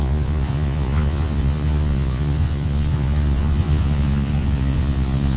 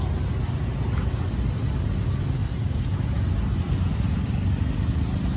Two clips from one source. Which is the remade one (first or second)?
first